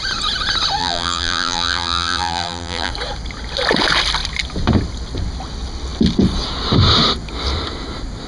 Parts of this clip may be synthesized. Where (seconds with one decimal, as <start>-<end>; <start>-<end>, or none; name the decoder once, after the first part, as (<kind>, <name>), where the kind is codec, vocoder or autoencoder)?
0.8-2.9 (vocoder, BigVGAN v2)